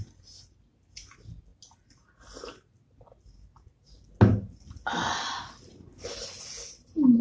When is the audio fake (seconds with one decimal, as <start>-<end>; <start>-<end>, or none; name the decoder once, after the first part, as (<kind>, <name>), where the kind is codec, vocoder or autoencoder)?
none